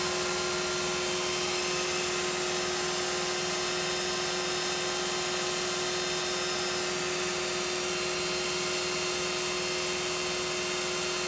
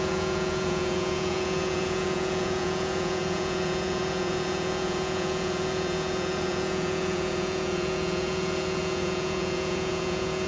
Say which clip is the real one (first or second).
first